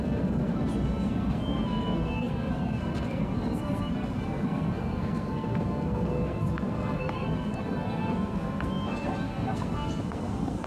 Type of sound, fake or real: fake